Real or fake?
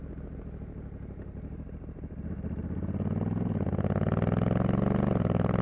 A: real